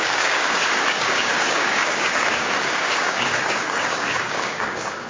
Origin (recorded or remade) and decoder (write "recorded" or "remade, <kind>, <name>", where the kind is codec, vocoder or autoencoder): remade, codec, DAC